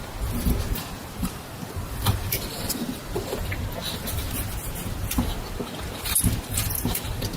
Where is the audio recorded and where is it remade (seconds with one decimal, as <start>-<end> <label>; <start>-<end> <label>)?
0.0-1.0 recorded; 1.0-3.0 remade; 3.0-7.4 recorded